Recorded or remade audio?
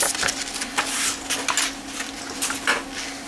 recorded